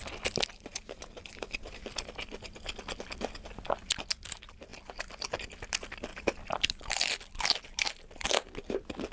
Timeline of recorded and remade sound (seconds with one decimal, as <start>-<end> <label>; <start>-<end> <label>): 0.0-4.7 recorded; 4.7-5.3 remade; 5.3-6.1 recorded; 6.1-6.6 remade; 6.6-9.1 recorded